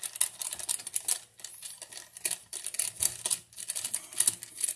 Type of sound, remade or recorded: recorded